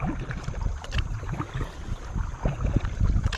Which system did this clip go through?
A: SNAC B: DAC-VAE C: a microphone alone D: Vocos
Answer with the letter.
C